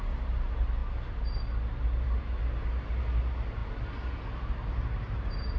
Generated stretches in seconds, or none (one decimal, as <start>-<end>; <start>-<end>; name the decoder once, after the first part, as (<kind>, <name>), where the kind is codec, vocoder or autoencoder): none